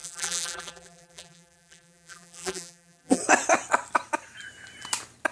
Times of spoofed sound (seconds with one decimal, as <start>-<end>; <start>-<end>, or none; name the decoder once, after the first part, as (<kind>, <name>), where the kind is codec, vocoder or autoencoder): 0.0-3.2 (vocoder, BigVGAN v2)